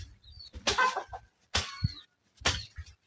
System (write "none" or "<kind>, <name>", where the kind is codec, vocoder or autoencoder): none